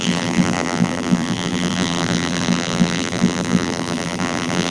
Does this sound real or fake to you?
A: fake